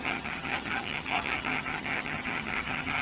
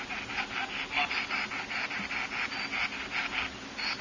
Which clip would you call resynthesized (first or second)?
first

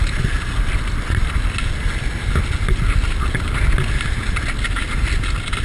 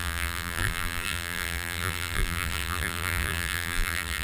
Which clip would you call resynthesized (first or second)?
second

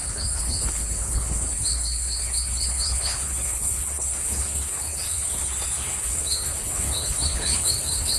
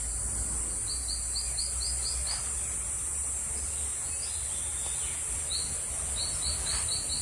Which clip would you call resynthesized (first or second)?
first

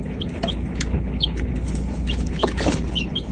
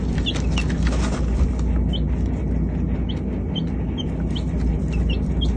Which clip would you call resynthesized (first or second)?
first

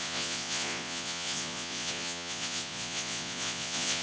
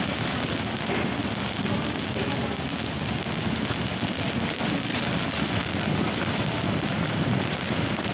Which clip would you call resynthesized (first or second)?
first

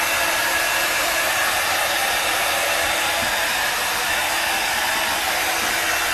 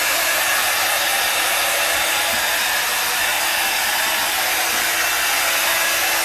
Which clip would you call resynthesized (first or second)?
first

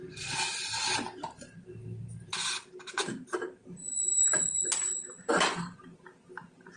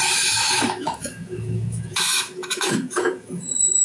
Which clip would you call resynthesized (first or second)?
second